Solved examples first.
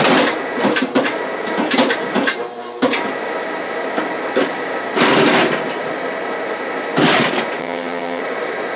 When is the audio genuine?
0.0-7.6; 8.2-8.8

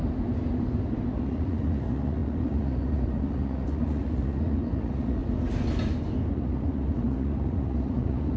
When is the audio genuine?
0.0-1.2; 5.2-6.3

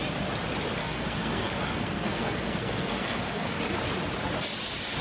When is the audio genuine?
0.0-0.8; 3.6-5.0

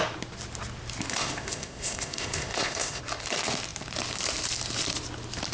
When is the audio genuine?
0.0-1.1; 3.0-5.5

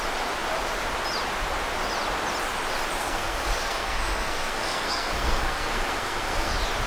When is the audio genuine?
0.0-3.0; 6.5-6.9

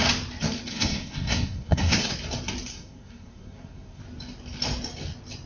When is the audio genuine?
0.0-0.7; 2.1-2.7; 4.0-5.5

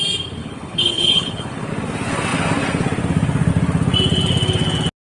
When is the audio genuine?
0.0-0.4; 1.7-5.0